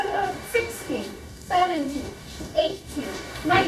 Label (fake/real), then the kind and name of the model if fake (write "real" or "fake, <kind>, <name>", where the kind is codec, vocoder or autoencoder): fake, codec, DAC